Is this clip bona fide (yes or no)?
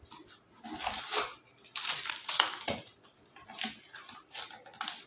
yes